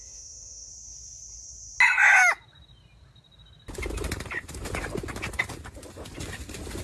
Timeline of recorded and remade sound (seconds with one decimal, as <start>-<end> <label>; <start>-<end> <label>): 0.0-0.7 remade; 0.7-6.8 recorded